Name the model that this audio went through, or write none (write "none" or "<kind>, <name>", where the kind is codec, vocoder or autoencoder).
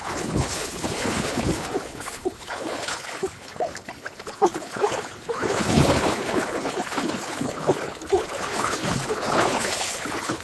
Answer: codec, HILCodec